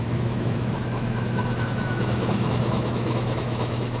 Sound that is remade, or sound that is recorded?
remade